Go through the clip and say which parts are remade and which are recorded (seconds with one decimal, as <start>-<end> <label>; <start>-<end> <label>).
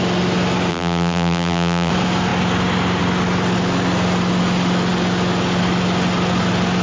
0.0-0.7 recorded; 0.7-1.9 remade; 1.9-6.8 recorded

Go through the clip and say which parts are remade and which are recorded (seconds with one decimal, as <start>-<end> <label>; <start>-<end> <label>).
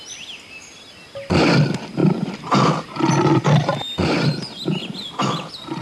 0.0-5.8 recorded